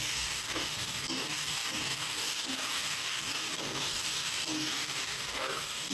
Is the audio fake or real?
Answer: fake